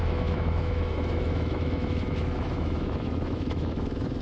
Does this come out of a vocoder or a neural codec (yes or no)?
yes